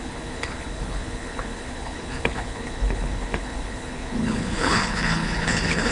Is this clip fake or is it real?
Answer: fake